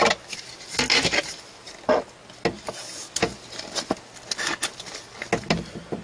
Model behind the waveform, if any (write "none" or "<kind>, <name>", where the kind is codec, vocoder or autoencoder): none